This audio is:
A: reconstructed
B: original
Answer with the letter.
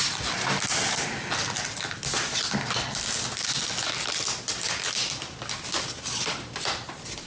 B